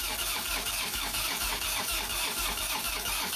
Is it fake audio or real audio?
fake